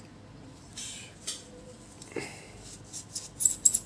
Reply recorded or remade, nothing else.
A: recorded